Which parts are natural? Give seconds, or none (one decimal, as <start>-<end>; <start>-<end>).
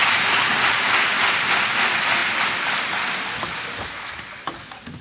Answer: 0.0-5.0